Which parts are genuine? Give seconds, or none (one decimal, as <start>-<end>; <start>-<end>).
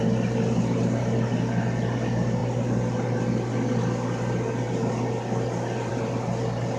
0.0-6.8